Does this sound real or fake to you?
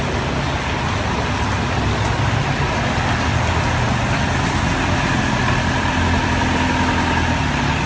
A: real